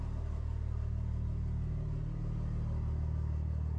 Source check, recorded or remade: recorded